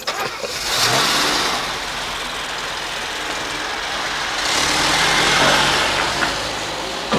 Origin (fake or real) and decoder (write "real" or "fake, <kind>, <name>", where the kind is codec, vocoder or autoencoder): real